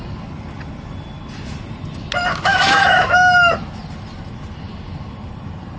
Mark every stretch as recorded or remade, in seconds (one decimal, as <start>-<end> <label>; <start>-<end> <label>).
0.0-2.5 recorded; 2.5-3.4 remade; 3.4-5.8 recorded